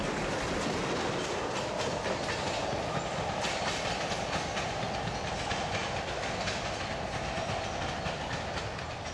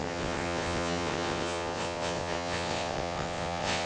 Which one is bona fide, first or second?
first